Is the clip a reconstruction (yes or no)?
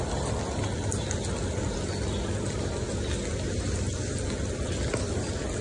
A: no